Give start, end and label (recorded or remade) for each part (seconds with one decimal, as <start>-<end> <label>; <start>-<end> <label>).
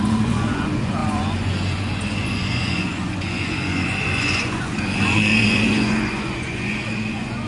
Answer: 0.0-7.5 remade